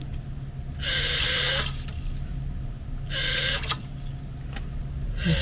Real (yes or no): yes